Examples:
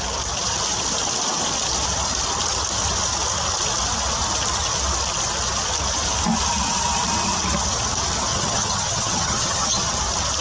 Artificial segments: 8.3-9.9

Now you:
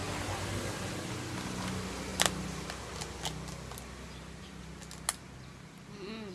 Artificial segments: none

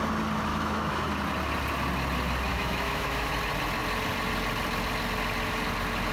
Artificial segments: 0.5-1.1; 2.5-3.3

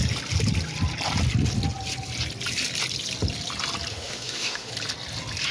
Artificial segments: 3.9-4.7

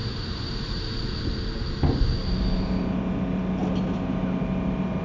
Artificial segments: none

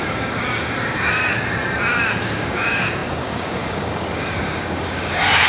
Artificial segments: 0.0-1.2; 2.2-5.5

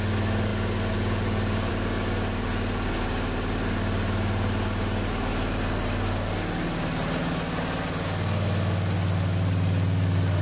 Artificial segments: none

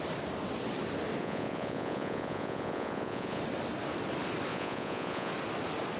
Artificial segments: 1.2-3.4; 4.5-5.3